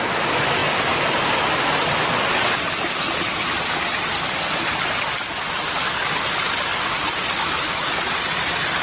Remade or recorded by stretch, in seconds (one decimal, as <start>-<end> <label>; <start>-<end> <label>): 0.0-8.8 recorded